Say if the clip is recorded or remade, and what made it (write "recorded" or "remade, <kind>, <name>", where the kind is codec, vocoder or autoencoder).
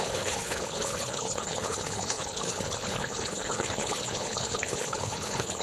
remade, codec, HILCodec